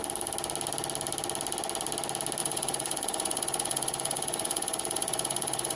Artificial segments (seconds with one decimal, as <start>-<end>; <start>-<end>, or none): 2.4-5.8